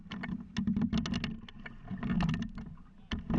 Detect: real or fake real